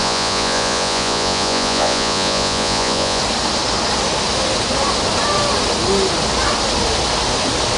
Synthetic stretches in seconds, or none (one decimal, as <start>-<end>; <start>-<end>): 0.0-3.2